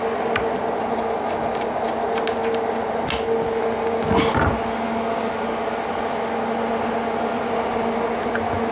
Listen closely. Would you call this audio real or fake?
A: real